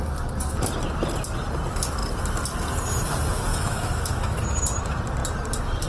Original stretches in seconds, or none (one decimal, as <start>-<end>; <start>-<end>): 0.0-3.5; 4.4-5.9